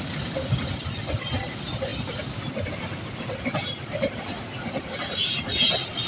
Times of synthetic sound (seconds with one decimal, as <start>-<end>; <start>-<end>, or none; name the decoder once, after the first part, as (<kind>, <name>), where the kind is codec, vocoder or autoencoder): none

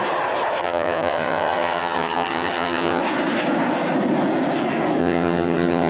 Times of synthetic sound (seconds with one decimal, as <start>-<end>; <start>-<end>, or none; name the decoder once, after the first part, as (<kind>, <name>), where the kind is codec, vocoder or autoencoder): 0.6-3.0 (vocoder, HiFi-GAN); 5.0-5.9

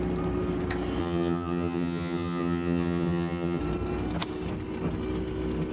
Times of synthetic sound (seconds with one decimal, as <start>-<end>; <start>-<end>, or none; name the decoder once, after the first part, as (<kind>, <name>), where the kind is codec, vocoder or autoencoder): 1.0-3.6 (vocoder, HiFi-GAN)

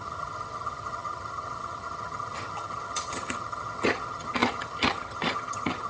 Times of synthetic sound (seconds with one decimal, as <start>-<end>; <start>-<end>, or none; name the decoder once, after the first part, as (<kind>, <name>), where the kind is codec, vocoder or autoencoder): 0.0-5.9 (vocoder, HiFi-GAN)

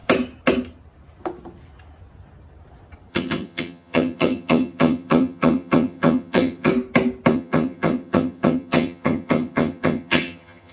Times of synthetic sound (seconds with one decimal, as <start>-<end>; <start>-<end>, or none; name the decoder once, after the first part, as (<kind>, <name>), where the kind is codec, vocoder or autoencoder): 3.1-6.7 (vocoder, HiFi-GAN); 7.3-10.7

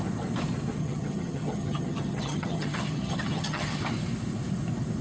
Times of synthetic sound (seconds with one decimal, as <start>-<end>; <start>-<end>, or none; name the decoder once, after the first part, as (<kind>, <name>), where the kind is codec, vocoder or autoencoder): 0.8-3.8 (vocoder, HiFi-GAN)

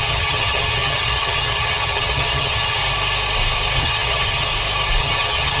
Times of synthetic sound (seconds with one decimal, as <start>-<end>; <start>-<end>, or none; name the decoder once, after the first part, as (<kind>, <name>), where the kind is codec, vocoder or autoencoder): 0.0-2.8 (vocoder, HiFi-GAN); 3.8-4.5; 5.0-5.6

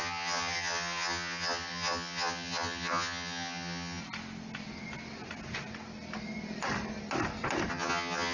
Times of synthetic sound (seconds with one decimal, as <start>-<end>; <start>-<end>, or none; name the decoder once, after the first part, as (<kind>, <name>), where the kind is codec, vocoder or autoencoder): 0.0-4.0 (vocoder, HiFi-GAN); 7.7-8.3